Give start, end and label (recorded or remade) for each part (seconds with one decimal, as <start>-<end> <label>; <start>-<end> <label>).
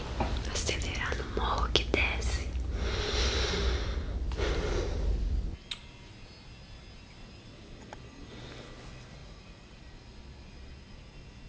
0.0-9.2 recorded; 9.2-9.8 remade; 9.8-11.5 recorded